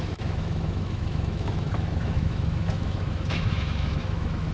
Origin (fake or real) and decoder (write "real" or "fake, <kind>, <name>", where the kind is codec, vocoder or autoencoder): fake, autoencoder, DAC-VAE